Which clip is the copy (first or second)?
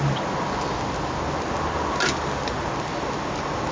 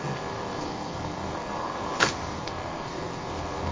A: second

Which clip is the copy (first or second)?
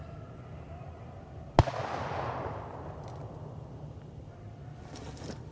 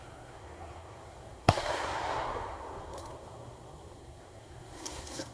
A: second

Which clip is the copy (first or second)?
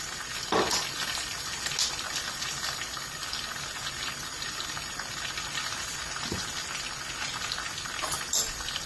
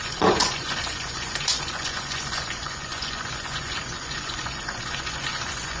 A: second